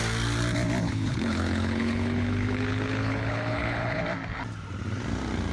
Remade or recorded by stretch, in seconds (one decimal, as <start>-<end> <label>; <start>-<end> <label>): 0.0-0.8 recorded; 0.8-4.0 remade; 4.0-5.5 recorded